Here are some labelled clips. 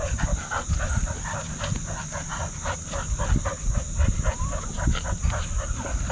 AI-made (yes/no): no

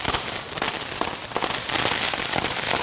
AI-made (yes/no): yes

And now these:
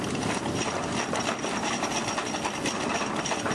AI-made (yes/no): no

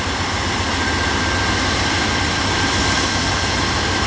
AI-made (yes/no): yes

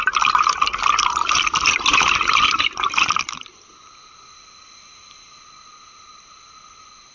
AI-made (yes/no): no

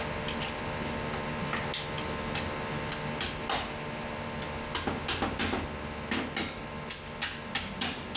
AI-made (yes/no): no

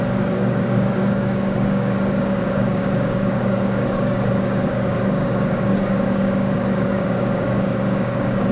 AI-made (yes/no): yes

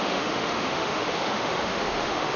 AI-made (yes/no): yes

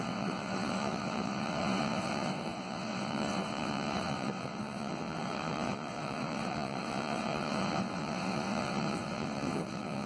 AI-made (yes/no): yes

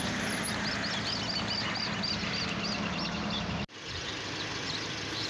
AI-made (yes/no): no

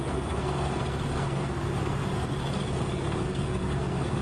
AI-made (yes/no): yes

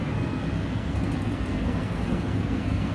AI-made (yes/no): yes